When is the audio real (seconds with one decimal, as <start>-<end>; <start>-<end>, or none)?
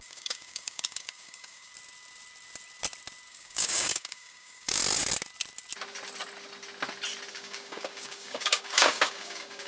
1.7-3.3; 4.8-7.3